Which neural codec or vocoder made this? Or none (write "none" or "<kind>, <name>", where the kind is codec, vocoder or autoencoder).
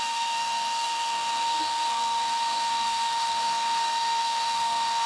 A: codec, SNAC